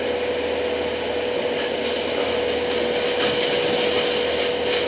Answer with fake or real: real